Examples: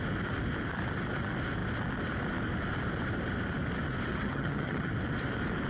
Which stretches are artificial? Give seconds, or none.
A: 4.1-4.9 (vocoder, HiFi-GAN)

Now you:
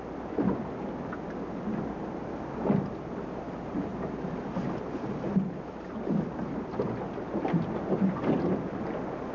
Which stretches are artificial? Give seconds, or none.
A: none

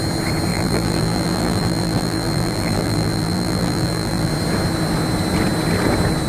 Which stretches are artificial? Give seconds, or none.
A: 0.5-4.3 (vocoder, BigVGAN v2)

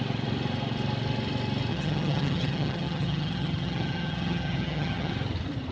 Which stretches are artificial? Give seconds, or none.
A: 1.7-5.1 (vocoder, HiFi-GAN)

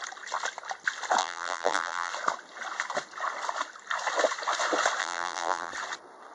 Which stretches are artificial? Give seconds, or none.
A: 1.2-2.1 (vocoder, BigVGAN v2); 5.0-5.7

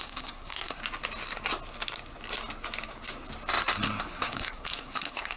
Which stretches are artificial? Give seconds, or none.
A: 0.0-0.8 (codec, SNAC); 4.0-5.4

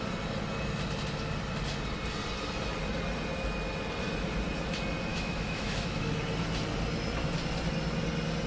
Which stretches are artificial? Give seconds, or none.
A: 5.1-6.1 (autoencoder, DAC-VAE)

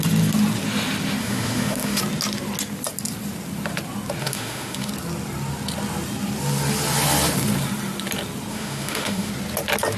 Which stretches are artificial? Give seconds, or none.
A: 1.2-2.0 (autoencoder, DAC-VAE); 4.2-4.9; 8.5-9.3